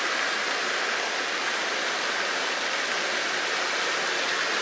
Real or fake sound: real